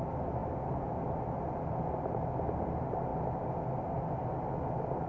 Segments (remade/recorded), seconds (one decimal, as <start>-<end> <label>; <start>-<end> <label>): 0.0-5.1 recorded